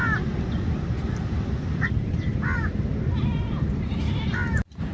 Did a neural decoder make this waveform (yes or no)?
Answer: no